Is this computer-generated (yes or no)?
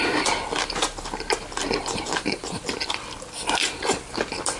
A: no